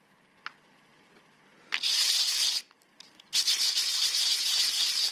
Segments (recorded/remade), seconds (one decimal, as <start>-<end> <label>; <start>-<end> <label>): 0.0-5.1 recorded